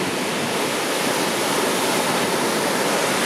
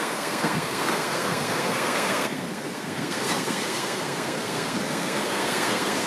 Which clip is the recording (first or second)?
first